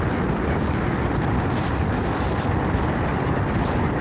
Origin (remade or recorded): recorded